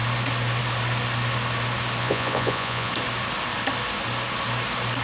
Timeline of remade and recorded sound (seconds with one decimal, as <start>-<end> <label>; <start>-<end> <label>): 0.0-2.0 recorded; 2.0-2.9 remade; 2.9-5.0 recorded